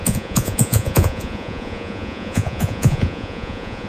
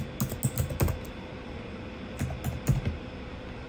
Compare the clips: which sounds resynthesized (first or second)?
first